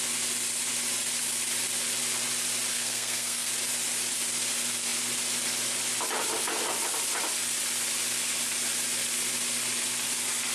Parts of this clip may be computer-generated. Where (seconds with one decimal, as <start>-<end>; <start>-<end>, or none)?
2.7-3.5